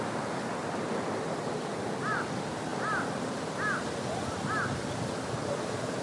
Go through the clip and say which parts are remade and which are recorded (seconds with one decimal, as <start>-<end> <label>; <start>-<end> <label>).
0.0-0.6 recorded; 0.6-1.5 remade; 1.5-6.0 recorded